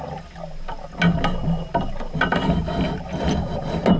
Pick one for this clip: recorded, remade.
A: recorded